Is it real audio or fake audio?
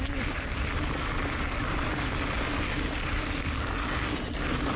real